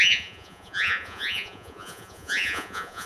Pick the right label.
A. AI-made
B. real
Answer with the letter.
A